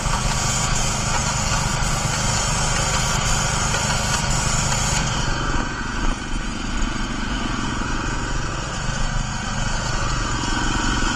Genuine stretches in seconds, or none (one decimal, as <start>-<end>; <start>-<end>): 1.2-4.8